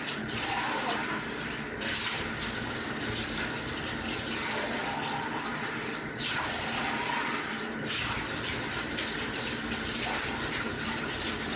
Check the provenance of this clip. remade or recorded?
recorded